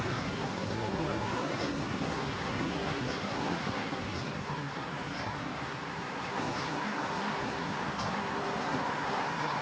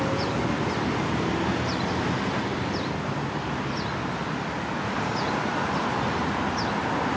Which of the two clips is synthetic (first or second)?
first